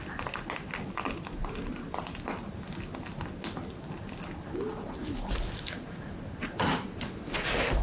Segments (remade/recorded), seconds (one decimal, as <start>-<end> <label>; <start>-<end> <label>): 0.0-7.8 recorded